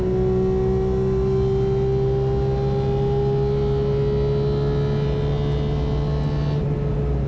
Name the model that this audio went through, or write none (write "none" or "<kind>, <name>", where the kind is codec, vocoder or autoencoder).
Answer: none